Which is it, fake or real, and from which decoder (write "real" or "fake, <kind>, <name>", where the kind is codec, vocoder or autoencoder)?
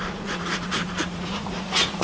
fake, vocoder, Vocos